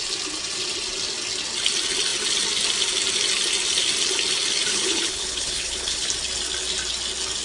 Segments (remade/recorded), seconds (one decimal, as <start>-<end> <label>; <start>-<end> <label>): 0.0-4.7 recorded; 4.7-6.1 remade; 6.1-7.4 recorded